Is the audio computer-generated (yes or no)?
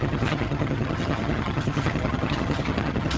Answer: yes